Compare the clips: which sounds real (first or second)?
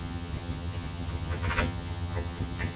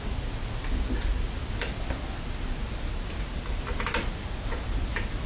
second